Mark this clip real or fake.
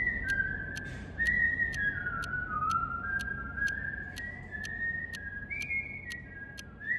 real